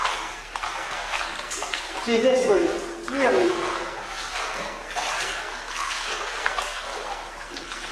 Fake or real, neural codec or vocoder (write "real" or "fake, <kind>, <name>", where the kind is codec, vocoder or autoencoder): fake, codec, SNAC